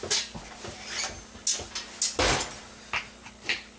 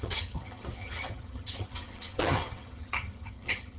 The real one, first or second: first